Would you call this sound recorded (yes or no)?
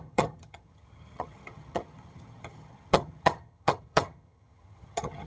no